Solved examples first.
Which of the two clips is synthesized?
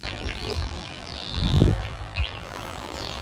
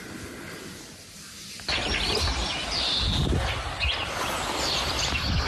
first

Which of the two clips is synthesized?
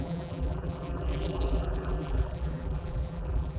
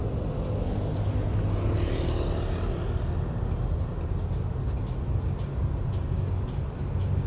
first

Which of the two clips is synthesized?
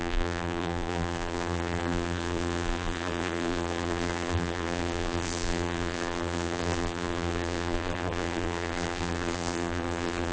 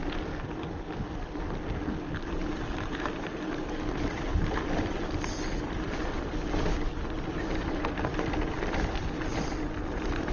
first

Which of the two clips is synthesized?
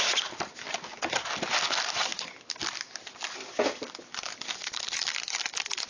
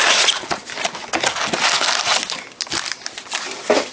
first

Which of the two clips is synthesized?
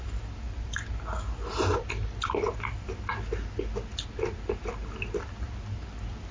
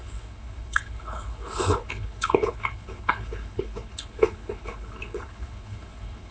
second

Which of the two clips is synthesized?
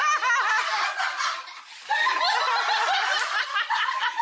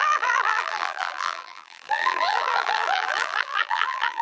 second